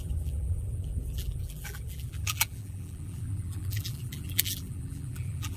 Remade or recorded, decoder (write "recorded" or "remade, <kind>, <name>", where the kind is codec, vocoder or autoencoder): remade, vocoder, BigVGAN v2